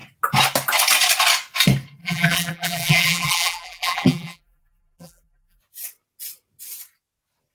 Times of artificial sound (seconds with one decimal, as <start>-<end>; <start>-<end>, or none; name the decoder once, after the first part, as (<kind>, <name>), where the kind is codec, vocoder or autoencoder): 2.0-5.6 (vocoder, BigVGAN v2)